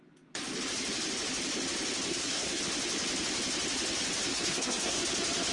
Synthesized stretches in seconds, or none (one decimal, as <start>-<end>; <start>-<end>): 2.1-2.6; 4.3-5.0